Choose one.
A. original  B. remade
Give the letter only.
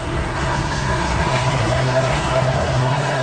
B